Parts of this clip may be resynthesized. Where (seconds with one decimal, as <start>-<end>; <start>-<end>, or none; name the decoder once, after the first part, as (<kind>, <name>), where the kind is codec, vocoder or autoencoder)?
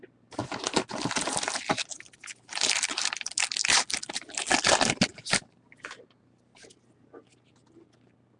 none